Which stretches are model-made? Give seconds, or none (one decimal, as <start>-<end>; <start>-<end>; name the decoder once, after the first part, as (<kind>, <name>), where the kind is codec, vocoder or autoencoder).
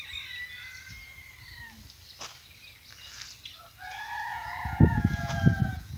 4.3-6.0 (vocoder, Vocos)